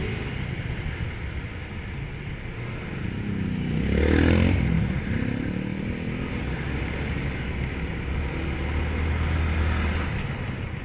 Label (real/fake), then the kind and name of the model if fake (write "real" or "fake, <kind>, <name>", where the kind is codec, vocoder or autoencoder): real